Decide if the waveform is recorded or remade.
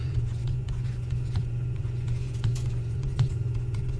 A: remade